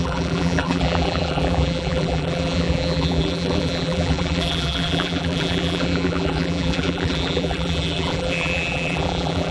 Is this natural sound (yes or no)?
no